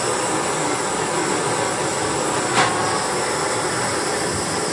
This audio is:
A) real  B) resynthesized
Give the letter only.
A